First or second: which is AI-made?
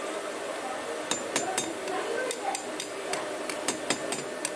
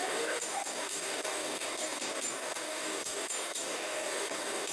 second